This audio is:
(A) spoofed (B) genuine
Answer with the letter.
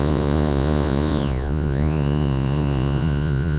A